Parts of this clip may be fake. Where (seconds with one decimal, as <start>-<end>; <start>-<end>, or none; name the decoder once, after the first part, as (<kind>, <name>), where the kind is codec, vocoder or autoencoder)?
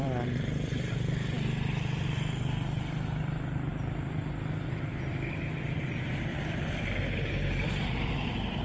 0.0-0.8 (vocoder, BigVGAN v2); 6.3-8.6